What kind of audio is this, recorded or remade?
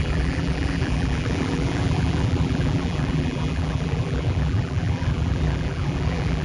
remade